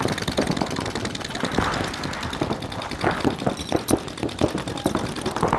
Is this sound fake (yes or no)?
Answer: yes